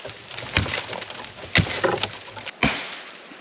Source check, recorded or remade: recorded